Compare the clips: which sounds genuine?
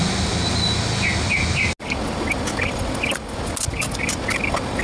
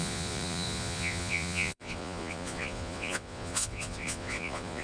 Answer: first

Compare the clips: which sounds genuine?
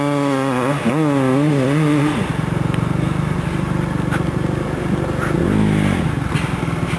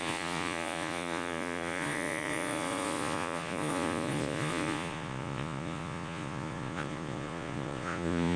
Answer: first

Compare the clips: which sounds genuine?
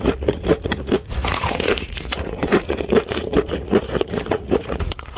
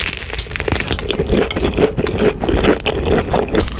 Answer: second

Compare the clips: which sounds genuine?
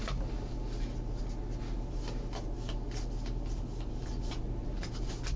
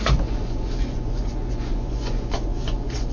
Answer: first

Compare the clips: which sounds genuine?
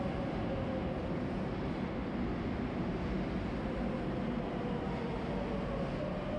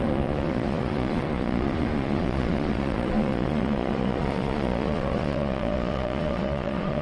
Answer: first